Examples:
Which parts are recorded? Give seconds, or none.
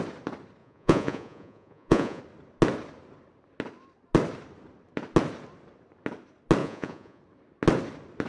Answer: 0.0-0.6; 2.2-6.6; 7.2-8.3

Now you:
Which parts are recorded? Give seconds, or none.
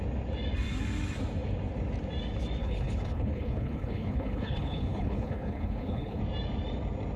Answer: 0.0-2.6; 6.2-7.2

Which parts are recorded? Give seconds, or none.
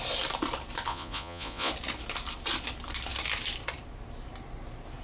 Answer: 0.0-0.9; 1.7-5.0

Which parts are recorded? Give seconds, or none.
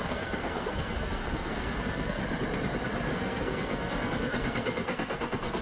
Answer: 2.2-3.1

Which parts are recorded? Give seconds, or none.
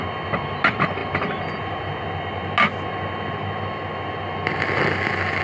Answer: 0.0-5.4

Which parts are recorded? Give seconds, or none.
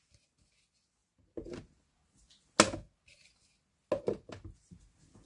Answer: 0.0-5.3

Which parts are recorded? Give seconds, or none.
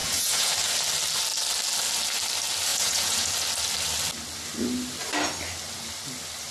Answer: 0.5-2.7; 3.3-6.5